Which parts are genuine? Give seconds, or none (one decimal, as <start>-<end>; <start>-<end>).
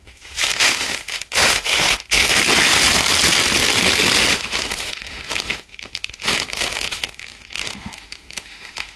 2.4-4.3